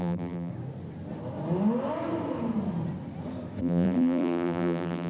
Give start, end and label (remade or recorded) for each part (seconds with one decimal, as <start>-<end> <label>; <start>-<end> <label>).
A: 0.0-0.5 remade; 0.5-3.6 recorded; 3.6-5.1 remade